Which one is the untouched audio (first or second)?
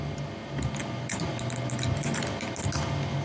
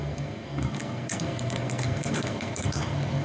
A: first